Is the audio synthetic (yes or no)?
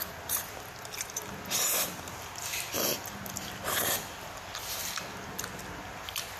no